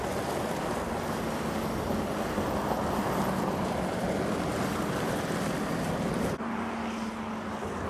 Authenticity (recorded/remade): recorded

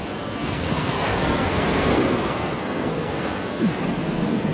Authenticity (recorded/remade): remade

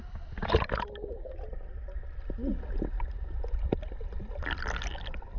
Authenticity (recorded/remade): recorded